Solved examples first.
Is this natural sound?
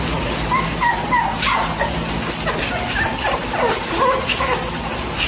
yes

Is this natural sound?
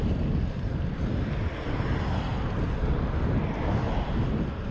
yes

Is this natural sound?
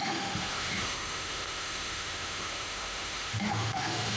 no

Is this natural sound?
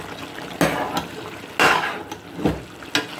yes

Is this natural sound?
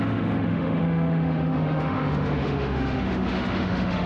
no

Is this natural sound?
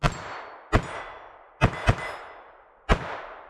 yes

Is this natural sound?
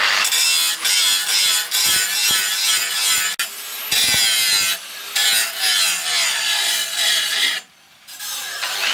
yes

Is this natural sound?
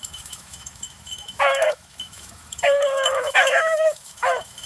no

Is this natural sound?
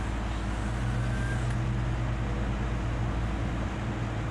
yes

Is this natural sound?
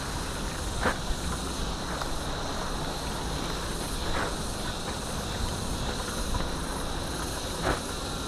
yes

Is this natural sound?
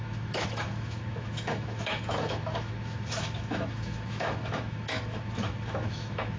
no